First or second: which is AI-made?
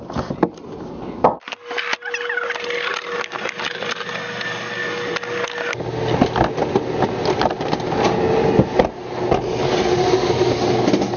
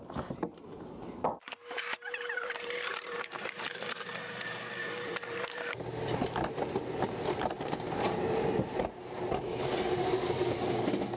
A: second